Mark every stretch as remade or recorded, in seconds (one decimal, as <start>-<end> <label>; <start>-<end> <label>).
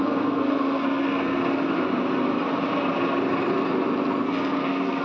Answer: 0.0-1.4 remade; 1.4-4.2 recorded; 4.2-5.0 remade